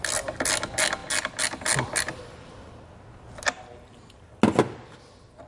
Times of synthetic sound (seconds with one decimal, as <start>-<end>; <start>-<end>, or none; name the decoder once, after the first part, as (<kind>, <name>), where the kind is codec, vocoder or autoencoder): none